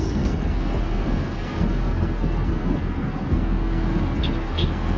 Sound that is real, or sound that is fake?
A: fake